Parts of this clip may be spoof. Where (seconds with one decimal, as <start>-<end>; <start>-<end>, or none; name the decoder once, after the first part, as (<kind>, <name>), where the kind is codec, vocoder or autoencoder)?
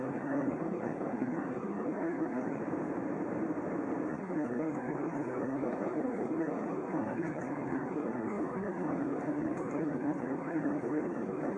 0.0-2.6 (codec, SNAC); 4.1-11.6